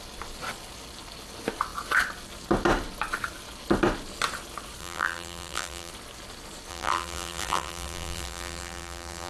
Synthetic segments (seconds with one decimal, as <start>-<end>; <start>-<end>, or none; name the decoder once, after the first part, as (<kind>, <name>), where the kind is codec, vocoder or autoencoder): 4.8-5.9 (vocoder, BigVGAN v2); 6.7-9.3

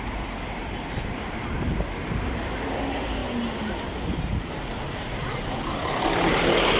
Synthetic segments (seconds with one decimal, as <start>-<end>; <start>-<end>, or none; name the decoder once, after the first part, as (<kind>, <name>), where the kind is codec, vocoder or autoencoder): 0.0-3.2 (vocoder, BigVGAN v2); 4.4-6.8

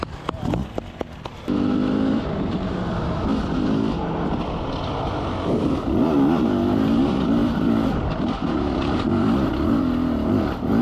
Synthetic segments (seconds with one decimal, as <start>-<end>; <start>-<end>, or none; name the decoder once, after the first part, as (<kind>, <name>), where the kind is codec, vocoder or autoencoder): 0.0-0.8 (vocoder, BigVGAN v2); 7.4-9.5

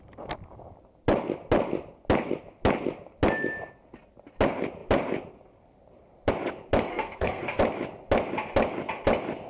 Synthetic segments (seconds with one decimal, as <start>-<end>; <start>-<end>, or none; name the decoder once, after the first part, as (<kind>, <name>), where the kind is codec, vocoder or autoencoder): 6.9-7.6 (codec, SNAC)

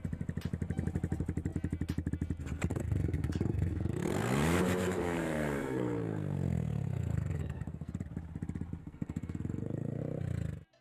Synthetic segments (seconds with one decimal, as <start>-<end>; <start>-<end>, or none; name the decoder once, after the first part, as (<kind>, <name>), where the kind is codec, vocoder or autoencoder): 2.7-7.9 (codec, SNAC); 8.8-10.0